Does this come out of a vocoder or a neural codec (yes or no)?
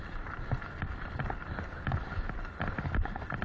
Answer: no